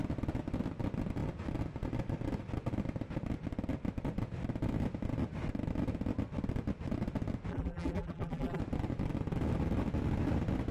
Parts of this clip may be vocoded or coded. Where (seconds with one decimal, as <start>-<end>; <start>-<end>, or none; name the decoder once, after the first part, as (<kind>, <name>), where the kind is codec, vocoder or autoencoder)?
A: 7.5-8.6 (vocoder, BigVGAN v2)